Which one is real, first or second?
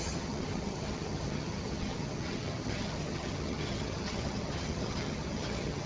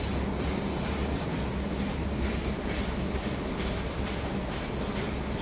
second